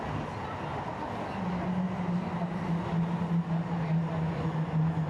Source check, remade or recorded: recorded